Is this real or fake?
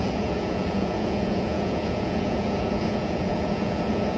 fake